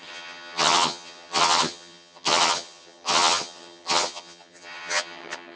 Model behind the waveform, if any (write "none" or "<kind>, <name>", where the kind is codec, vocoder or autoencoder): vocoder, HiFi-GAN